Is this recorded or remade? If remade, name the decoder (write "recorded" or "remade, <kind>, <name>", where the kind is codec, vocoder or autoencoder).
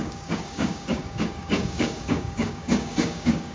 remade, codec, DAC